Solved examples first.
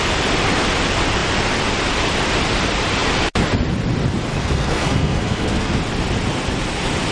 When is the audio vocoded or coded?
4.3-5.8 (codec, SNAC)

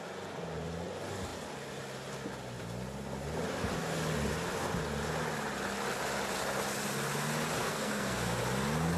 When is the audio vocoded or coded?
7.6-8.4 (codec, SNAC)